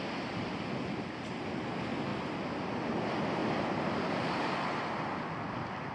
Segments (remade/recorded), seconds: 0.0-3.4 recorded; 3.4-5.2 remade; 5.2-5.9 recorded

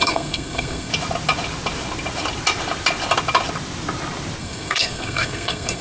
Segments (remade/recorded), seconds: 0.0-0.9 remade; 0.9-4.4 recorded; 4.4-5.8 remade

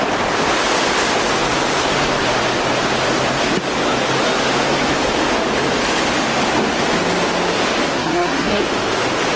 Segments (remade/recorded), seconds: 0.0-7.9 recorded; 7.9-8.6 remade; 8.6-9.4 recorded

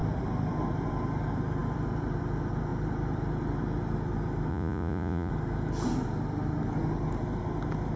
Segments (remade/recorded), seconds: 0.0-4.5 recorded; 4.5-5.3 remade; 5.3-8.0 recorded

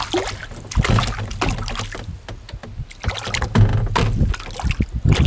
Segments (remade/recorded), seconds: 0.0-5.3 recorded